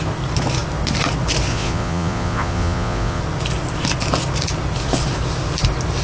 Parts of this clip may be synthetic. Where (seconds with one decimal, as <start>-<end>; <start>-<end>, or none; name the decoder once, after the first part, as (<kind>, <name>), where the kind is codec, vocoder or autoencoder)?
1.5-3.2 (vocoder, Vocos)